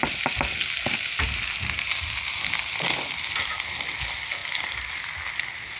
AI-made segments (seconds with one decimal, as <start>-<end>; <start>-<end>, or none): none